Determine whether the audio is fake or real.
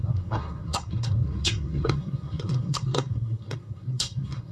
fake